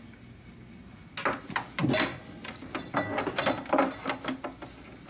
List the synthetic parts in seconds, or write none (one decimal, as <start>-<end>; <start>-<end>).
none